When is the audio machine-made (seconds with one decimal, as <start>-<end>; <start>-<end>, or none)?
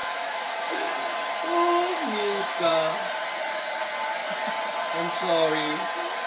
0.0-0.9; 1.9-2.7